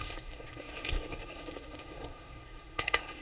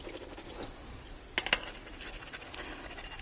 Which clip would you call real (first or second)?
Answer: second